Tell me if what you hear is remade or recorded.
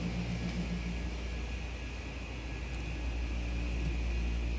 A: recorded